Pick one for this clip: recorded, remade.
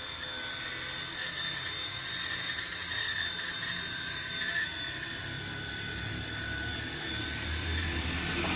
recorded